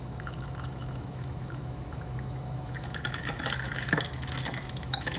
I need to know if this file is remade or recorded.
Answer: remade